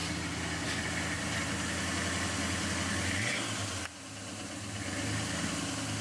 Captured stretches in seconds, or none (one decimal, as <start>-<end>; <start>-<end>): 0.0-6.0